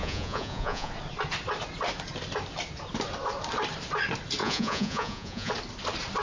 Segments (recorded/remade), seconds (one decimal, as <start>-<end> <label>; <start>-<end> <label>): 0.0-0.9 remade; 0.9-4.4 recorded; 4.4-5.5 remade; 5.5-6.2 recorded